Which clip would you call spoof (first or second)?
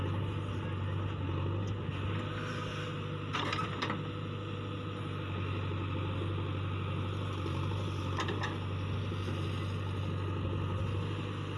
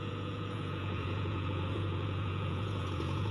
second